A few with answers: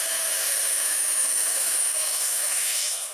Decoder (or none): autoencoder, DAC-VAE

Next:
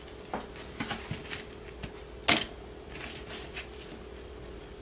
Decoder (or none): none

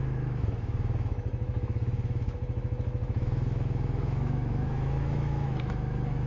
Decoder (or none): autoencoder, DAC-VAE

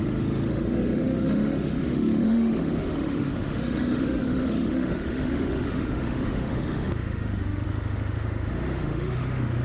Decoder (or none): autoencoder, DAC-VAE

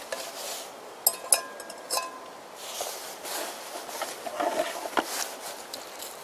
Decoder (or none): none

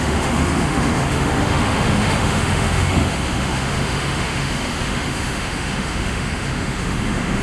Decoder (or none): autoencoder, DAC-VAE